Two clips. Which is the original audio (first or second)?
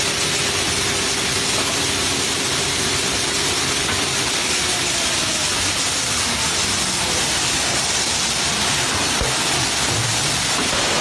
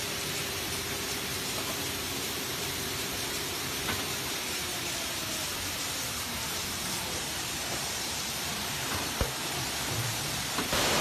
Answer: first